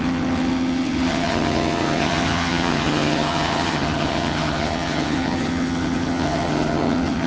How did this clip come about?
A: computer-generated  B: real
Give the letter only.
A